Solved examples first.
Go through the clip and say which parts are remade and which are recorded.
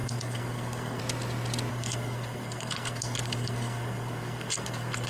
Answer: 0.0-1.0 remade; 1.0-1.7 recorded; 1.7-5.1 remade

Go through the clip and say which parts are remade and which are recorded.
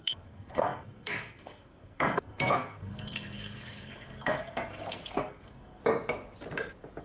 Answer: 0.0-5.8 remade; 5.8-7.0 recorded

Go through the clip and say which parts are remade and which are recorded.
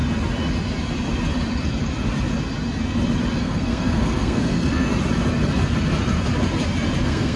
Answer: 0.0-3.4 recorded; 3.4-4.9 remade; 4.9-7.0 recorded; 7.0-7.4 remade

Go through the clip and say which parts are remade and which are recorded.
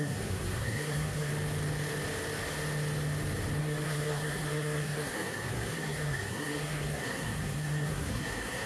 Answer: 0.0-1.3 remade; 1.3-3.6 recorded; 3.6-8.7 remade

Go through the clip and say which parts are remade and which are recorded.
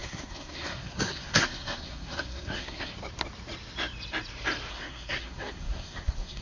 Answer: 0.0-2.9 remade; 2.9-4.7 recorded; 4.7-6.4 remade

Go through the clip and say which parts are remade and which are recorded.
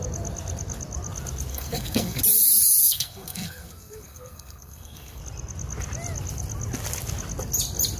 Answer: 0.0-1.5 recorded; 1.5-2.2 remade; 2.2-2.8 recorded; 2.8-5.2 remade; 5.2-8.0 recorded